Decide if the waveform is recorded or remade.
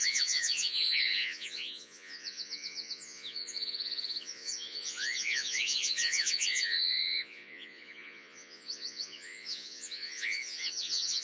remade